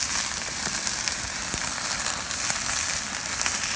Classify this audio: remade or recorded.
recorded